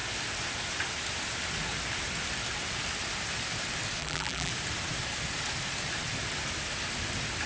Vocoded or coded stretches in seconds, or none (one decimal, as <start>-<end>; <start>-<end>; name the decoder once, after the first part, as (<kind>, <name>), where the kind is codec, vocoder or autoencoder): 4.0-4.5 (vocoder, BigVGAN v2)